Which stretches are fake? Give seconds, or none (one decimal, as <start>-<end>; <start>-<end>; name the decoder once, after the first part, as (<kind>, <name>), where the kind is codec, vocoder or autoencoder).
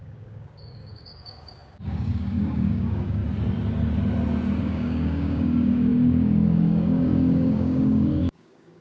0.0-3.2 (codec, DAC); 4.6-8.8